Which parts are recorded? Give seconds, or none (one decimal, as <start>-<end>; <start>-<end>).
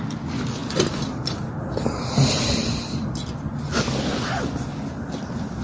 0.0-5.6